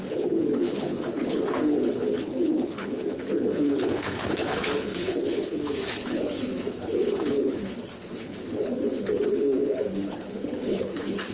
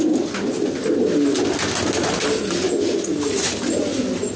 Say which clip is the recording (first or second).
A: second